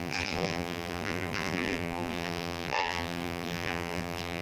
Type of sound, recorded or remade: remade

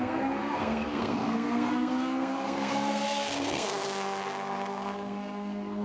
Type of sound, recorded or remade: remade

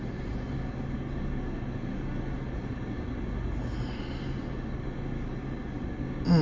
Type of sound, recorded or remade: recorded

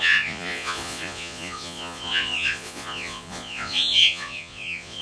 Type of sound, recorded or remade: remade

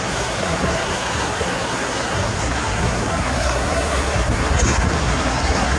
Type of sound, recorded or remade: remade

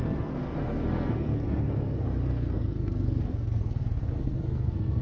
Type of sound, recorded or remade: remade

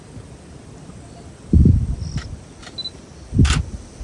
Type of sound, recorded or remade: recorded